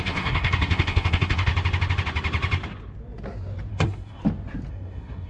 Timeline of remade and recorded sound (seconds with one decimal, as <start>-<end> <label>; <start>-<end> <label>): 0.0-1.5 remade; 1.5-3.7 recorded; 3.7-4.2 remade; 4.2-4.7 recorded; 4.7-5.3 remade